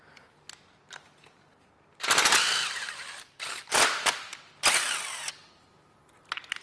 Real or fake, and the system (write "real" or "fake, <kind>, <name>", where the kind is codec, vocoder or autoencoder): real